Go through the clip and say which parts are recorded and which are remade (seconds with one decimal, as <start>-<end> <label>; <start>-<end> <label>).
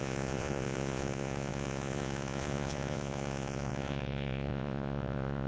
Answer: 0.0-5.5 remade